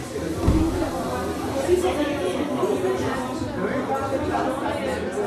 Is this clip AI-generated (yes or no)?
no